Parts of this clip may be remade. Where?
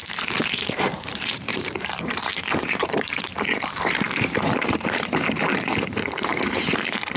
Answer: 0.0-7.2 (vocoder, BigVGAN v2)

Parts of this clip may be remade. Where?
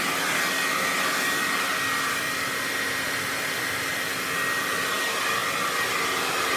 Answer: none